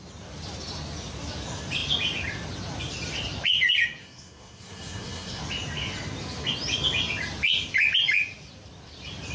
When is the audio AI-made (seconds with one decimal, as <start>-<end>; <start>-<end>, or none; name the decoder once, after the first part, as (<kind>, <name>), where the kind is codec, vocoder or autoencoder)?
4.0-5.4 (codec, SNAC)